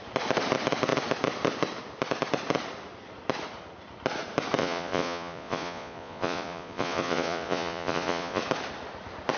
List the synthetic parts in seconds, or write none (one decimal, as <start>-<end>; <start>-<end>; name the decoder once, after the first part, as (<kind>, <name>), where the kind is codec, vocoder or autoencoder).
4.6-8.4 (vocoder, Vocos)